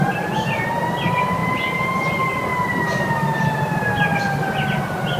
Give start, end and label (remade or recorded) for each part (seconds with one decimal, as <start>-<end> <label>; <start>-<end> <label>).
0.0-5.2 recorded